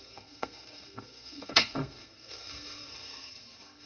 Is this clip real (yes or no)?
no